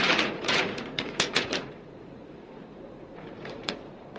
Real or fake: fake